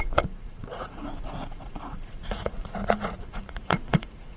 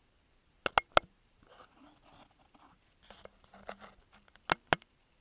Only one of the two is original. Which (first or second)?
second